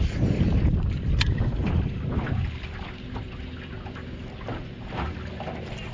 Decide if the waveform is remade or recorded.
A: recorded